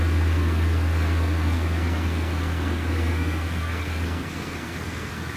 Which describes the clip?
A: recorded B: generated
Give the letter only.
B